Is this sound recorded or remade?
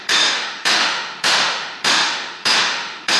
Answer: remade